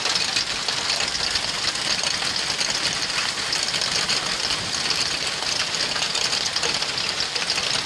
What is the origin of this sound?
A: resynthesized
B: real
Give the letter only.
B